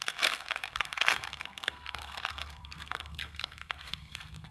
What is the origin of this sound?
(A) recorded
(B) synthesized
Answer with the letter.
B